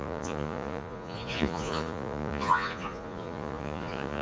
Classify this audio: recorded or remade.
remade